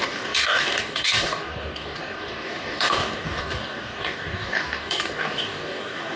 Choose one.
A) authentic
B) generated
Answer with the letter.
B